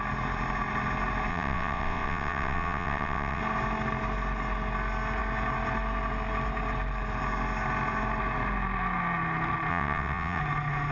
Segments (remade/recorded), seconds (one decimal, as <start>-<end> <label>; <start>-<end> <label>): 0.0-1.3 recorded; 1.3-3.4 remade; 3.4-9.7 recorded; 9.7-10.4 remade; 10.4-10.9 recorded